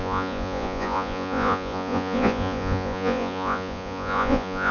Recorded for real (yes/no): no